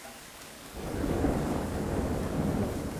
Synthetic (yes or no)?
yes